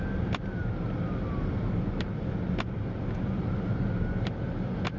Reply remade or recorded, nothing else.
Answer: recorded